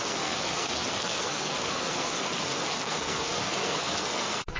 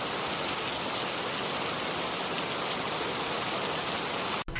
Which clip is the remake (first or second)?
first